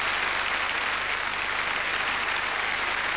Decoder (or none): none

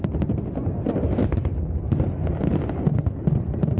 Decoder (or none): none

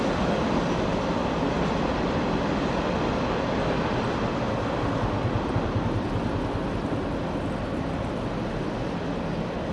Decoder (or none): none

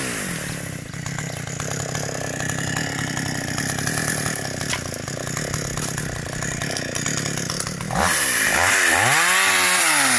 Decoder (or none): none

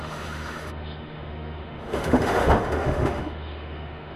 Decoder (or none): autoencoder, DAC-VAE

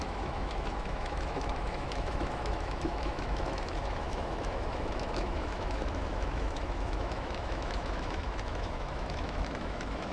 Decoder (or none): autoencoder, DAC-VAE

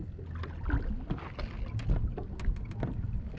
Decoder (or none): none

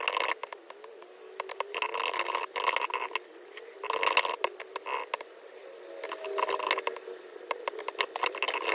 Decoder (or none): none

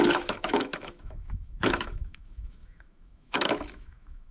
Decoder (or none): autoencoder, DAC-VAE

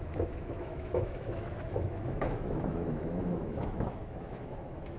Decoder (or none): autoencoder, DAC-VAE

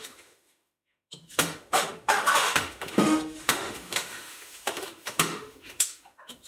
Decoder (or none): autoencoder, DAC-VAE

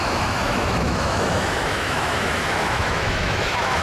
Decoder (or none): autoencoder, DAC-VAE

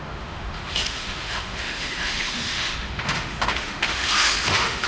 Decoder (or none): autoencoder, DAC-VAE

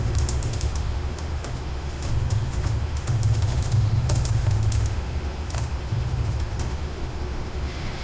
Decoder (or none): autoencoder, DAC-VAE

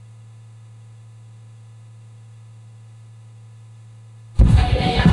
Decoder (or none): autoencoder, DAC-VAE